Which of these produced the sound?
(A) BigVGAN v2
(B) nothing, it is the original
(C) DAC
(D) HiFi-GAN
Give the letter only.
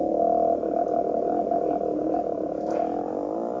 B